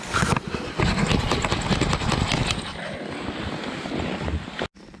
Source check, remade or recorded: recorded